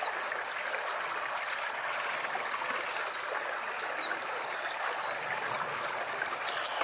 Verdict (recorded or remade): recorded